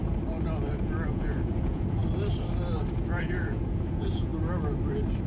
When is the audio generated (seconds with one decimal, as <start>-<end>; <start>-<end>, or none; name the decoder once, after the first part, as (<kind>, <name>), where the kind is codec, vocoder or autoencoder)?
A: 0.7-2.0 (vocoder, Vocos); 3.2-4.3